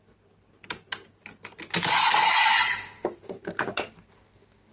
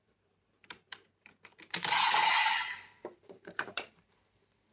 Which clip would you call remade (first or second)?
second